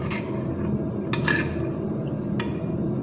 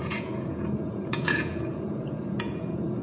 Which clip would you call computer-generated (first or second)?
second